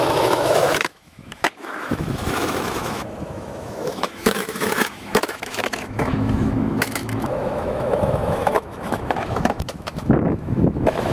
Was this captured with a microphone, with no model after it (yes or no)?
no